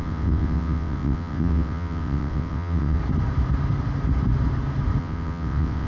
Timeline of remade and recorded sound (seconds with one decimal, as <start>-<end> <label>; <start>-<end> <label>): 0.0-3.0 remade; 3.0-5.0 recorded; 5.0-5.9 remade